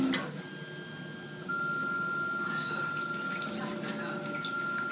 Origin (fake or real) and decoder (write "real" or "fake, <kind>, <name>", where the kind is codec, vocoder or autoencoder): real